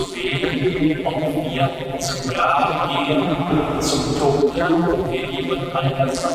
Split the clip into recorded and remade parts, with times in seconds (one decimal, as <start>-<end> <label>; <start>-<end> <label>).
0.0-3.5 remade; 3.5-4.4 recorded; 4.4-6.3 remade